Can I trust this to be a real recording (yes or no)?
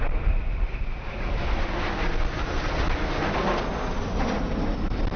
yes